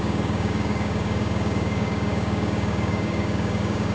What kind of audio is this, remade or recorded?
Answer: remade